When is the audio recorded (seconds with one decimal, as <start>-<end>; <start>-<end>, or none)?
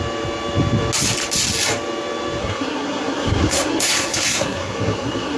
0.0-2.4